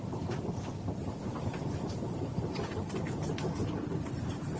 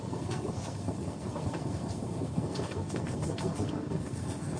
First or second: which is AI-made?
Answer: second